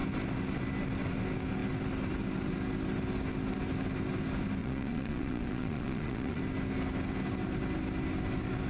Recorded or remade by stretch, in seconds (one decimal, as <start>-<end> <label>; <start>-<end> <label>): 0.0-4.6 recorded; 4.6-6.4 remade; 6.4-8.7 recorded